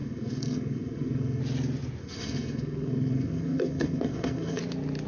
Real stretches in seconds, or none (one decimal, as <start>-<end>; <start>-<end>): 1.4-2.0; 4.6-5.1